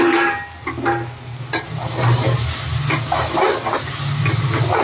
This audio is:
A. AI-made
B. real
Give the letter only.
B